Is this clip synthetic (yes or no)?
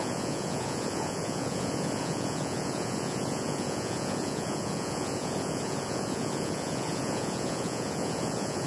yes